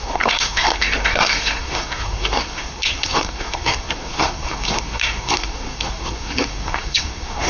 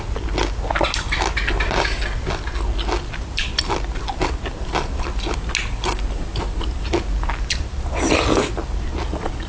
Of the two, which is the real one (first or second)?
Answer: second